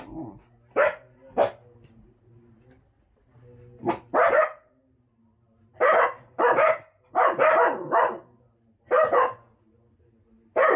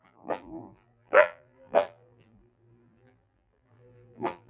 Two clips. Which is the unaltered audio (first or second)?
first